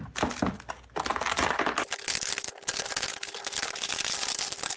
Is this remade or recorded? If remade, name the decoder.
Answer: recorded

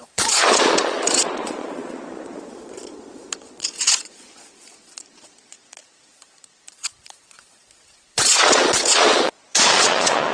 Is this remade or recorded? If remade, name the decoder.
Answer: remade, vocoder, Vocos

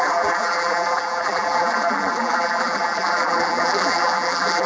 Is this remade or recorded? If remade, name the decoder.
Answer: remade, vocoder, BigVGAN v2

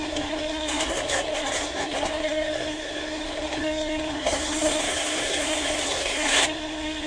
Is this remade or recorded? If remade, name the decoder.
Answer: remade, codec, SNAC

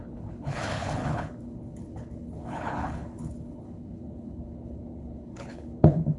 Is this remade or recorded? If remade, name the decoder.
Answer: remade, codec, HILCodec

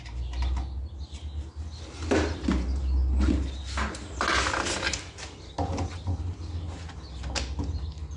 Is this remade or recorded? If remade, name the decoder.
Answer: recorded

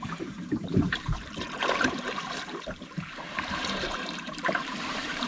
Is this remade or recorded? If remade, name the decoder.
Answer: remade, vocoder, BigVGAN v2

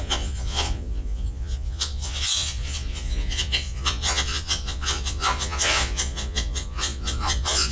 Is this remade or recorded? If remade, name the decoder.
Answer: remade, vocoder, Vocos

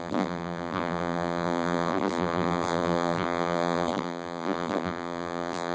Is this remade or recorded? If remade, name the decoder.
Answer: remade, vocoder, BigVGAN v2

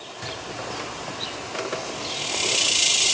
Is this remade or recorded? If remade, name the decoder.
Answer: recorded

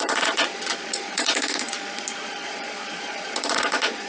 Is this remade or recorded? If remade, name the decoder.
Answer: remade, vocoder, Vocos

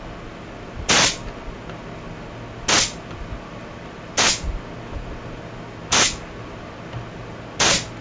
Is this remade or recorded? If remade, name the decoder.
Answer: recorded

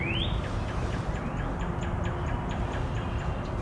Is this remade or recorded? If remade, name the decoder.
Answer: recorded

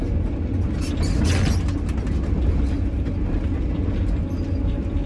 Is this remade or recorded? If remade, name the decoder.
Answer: recorded